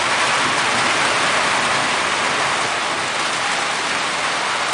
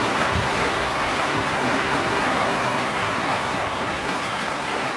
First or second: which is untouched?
first